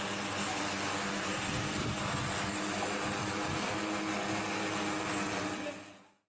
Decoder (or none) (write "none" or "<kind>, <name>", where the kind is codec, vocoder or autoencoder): none